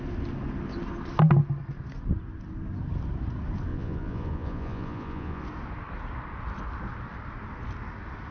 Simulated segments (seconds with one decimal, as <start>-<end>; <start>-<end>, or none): 3.7-5.4